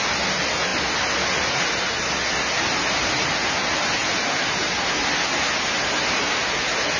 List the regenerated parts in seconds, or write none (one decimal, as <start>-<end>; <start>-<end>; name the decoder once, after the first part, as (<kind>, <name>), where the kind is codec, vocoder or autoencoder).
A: none